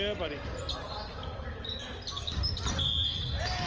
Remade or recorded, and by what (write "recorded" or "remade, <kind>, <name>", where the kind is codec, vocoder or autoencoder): recorded